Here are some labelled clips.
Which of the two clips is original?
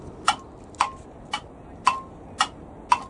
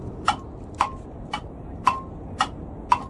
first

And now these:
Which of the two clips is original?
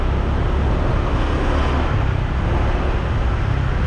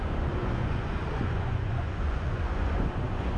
first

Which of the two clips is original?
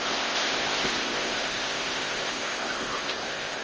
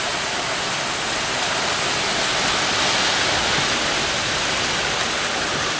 second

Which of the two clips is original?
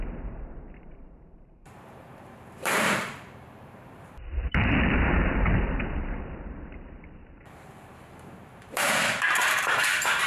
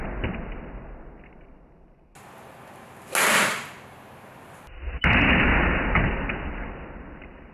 second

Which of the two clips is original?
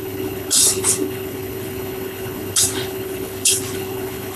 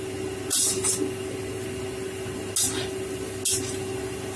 second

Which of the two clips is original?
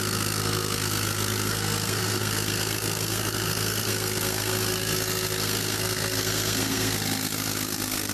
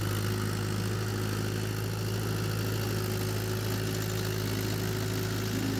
second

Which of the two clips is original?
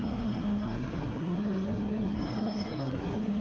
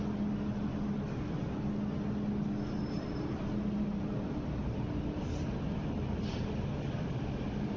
second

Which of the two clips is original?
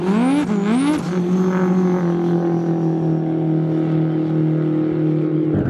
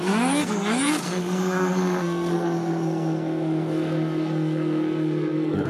first